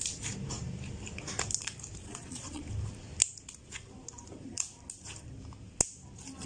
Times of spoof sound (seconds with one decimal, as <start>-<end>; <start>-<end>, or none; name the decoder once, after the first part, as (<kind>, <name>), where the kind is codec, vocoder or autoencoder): 2.0-2.6 (vocoder, Vocos)

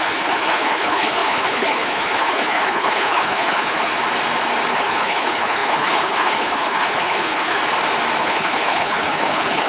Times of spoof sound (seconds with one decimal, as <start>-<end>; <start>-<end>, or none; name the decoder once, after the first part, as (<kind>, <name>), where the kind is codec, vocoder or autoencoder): 0.0-3.9 (codec, HILCodec); 4.7-7.6; 8.2-9.7

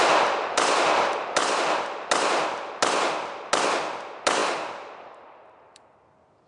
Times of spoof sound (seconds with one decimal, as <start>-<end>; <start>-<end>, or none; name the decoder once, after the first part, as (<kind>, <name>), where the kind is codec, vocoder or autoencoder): none

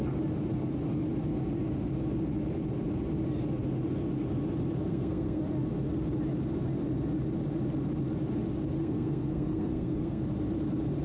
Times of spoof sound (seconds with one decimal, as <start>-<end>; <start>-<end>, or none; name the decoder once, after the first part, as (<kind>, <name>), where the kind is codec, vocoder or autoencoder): 4.8-5.4 (codec, SNAC); 8.8-10.2

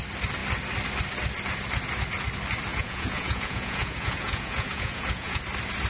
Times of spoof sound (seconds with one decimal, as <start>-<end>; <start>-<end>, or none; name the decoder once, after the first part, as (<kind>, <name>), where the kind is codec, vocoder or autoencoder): 2.7-5.4 (vocoder, Vocos)

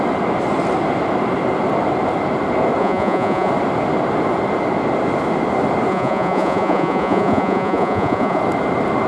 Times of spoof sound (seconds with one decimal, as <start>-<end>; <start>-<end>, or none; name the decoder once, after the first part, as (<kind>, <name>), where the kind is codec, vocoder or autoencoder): 2.8-3.5 (vocoder, Vocos); 5.9-8.4

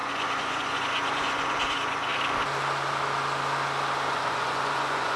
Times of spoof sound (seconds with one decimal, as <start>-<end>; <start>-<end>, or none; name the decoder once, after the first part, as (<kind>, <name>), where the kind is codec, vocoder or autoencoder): 0.0-2.1 (vocoder, Vocos); 4.1-5.2

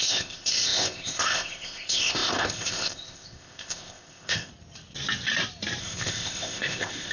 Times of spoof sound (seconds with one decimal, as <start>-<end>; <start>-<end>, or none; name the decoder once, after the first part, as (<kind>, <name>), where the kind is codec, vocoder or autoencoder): 0.0-4.5 (codec, ZipCodec); 5.8-7.1